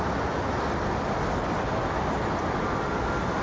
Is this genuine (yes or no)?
no